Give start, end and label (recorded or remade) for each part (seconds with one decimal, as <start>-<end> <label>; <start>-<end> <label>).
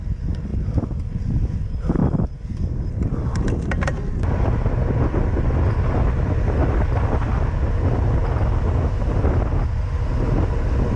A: 0.0-11.0 recorded